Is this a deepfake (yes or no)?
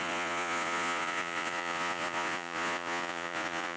yes